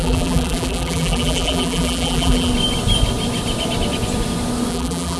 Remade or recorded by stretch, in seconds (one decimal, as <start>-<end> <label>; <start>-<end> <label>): 0.0-2.5 remade; 2.5-4.7 recorded; 4.7-5.2 remade